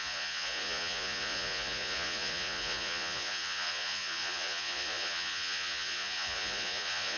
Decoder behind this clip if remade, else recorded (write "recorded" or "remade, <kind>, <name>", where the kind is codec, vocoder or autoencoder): remade, vocoder, Vocos